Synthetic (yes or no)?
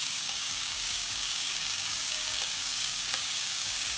yes